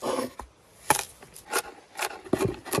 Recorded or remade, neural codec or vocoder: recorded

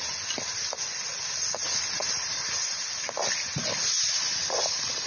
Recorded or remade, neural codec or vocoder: recorded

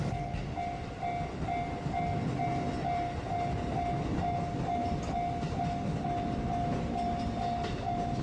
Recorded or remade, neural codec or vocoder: recorded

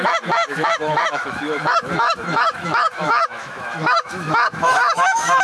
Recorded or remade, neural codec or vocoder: remade, autoencoder, DAC-VAE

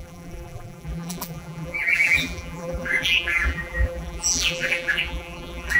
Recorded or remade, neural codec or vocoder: remade, vocoder, BigVGAN v2